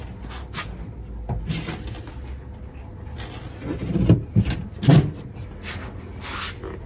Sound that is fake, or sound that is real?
real